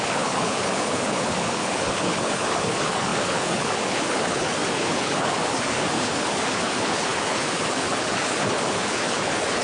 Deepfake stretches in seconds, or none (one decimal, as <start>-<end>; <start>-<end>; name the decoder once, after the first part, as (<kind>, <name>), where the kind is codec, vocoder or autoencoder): 0.0-9.6 (codec, HILCodec)